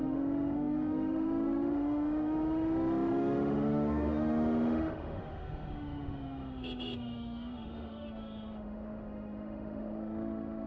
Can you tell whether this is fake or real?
fake